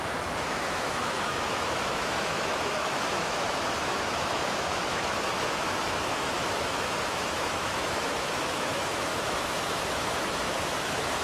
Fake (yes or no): yes